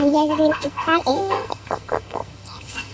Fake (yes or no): yes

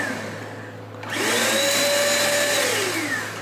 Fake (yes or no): no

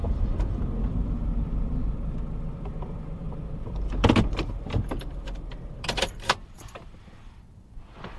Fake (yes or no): yes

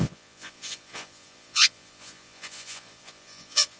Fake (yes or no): yes